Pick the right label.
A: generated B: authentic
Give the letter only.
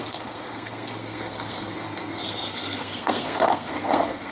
A